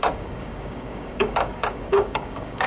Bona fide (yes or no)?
no